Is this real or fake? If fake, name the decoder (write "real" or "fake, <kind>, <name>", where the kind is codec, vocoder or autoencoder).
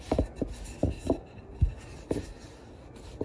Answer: real